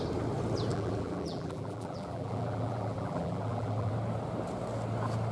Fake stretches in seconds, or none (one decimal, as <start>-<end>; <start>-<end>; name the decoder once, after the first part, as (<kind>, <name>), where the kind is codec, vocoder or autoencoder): 0.7-3.9 (vocoder, BigVGAN v2)